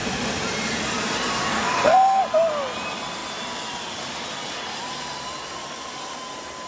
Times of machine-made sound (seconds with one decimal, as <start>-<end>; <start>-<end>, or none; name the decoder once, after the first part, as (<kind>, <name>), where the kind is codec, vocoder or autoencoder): 1.5-2.2 (codec, SNAC)